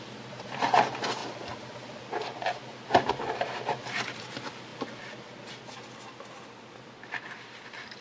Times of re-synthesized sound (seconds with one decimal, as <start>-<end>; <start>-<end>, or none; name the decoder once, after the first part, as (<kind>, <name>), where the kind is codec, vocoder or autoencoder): none